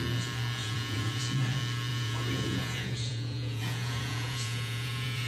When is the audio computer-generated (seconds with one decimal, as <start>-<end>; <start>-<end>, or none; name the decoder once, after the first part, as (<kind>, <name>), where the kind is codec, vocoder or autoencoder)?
0.6-1.2 (vocoder, Vocos); 1.9-5.3